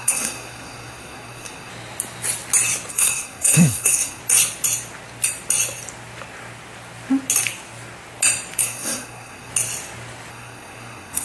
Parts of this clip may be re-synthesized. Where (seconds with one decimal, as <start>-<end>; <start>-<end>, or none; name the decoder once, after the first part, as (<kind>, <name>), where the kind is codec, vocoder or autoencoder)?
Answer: 0.0-1.7 (codec, SNAC); 2.9-4.2; 8.6-9.5; 10.3-11.2